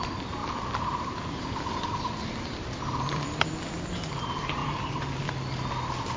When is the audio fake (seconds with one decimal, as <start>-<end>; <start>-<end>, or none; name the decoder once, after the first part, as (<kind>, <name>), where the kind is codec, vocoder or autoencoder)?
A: 0.4-1.4 (vocoder, BigVGAN v2); 2.6-3.9; 4.6-5.3